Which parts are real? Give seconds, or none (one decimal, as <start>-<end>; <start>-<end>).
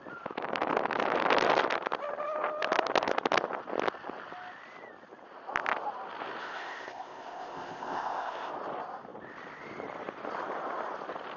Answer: 0.0-6.4; 8.5-11.4